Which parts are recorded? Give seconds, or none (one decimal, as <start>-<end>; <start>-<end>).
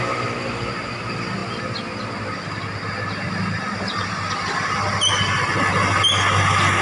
0.0-6.8